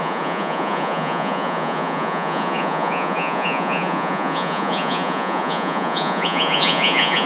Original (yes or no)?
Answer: no